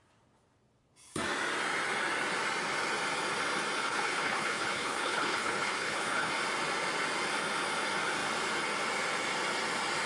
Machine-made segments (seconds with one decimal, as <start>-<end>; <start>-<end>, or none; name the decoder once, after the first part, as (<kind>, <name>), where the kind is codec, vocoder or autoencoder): 3.8-6.3 (codec, HILCodec)